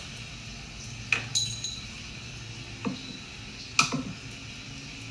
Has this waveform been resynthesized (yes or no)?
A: no